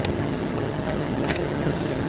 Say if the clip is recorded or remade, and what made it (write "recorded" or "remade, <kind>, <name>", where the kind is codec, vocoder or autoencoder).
remade, vocoder, HiFi-GAN